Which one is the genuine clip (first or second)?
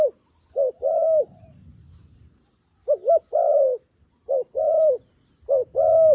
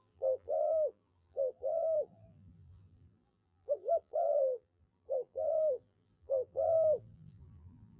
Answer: first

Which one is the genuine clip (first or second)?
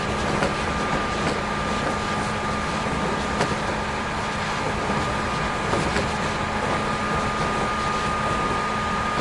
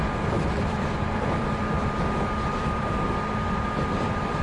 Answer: first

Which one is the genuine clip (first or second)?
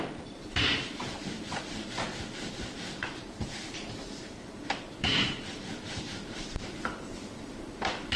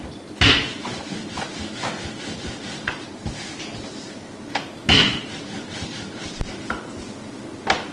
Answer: second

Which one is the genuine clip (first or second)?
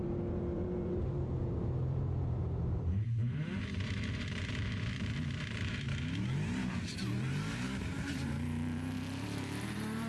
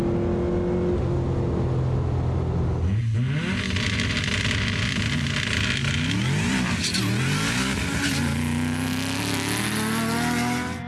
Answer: second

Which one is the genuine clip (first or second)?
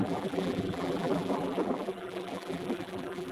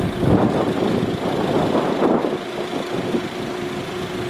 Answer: second